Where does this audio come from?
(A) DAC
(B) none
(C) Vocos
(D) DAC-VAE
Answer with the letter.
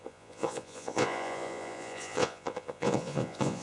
C